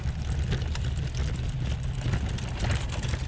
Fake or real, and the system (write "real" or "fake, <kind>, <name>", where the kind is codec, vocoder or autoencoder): real